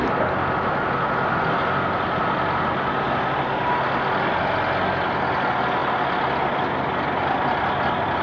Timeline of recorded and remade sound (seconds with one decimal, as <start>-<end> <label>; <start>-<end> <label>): 0.0-8.2 recorded